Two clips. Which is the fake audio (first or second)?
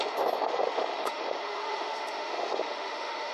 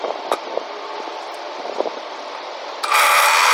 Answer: first